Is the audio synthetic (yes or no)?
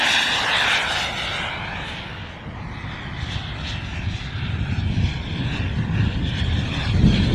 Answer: no